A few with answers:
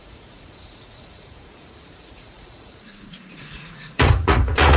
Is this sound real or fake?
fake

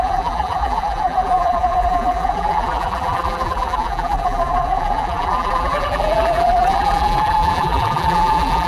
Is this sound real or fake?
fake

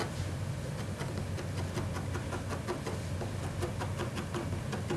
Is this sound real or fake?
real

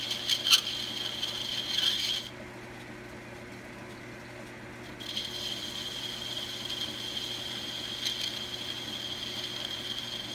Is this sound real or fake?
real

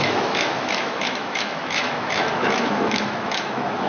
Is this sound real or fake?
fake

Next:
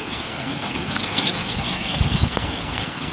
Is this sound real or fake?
fake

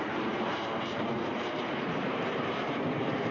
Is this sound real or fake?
fake